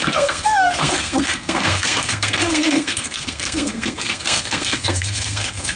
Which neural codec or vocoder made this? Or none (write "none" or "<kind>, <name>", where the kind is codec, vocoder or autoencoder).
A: codec, SNAC